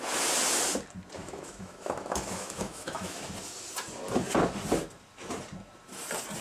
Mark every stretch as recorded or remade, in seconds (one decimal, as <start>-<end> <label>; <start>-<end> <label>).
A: 0.0-1.2 recorded; 1.2-3.2 remade; 3.2-6.4 recorded